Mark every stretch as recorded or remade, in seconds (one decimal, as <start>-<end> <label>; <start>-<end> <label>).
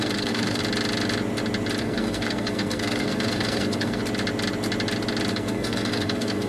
0.0-0.6 remade; 0.6-1.8 recorded; 1.8-4.0 remade; 4.0-5.3 recorded; 5.3-6.5 remade